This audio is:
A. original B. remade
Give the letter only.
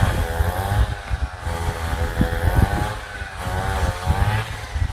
A